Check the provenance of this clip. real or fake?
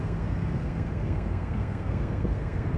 fake